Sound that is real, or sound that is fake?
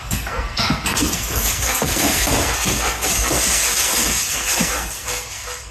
fake